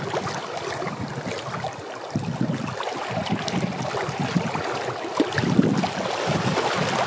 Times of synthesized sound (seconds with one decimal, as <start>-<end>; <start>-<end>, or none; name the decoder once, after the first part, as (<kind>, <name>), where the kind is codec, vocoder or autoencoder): none